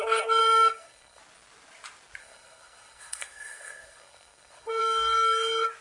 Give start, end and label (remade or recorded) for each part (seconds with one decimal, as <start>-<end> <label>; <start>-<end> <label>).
0.0-0.4 recorded; 0.4-1.2 remade; 1.2-2.2 recorded; 2.2-4.8 remade; 4.8-5.8 recorded